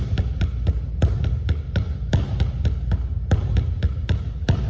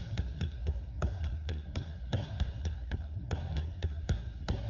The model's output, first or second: second